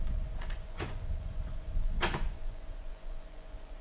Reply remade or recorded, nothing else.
remade